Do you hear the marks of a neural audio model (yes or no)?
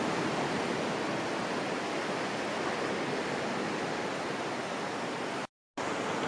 no